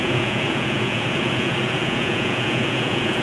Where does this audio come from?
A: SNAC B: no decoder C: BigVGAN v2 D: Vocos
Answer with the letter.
D